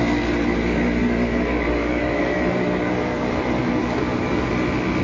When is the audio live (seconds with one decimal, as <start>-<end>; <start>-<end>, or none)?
0.0-1.0; 3.3-3.8; 4.5-5.0